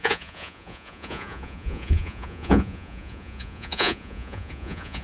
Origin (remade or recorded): remade